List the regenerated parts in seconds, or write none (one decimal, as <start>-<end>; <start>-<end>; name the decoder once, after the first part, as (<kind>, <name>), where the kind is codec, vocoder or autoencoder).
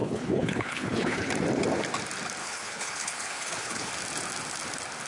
0.0-1.3 (codec, HILCodec); 2.4-3.9